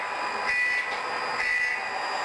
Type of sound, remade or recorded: recorded